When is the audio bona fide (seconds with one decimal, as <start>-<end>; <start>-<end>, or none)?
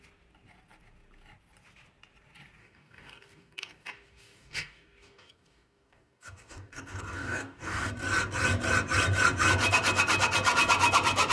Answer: 0.0-2.6; 7.9-11.3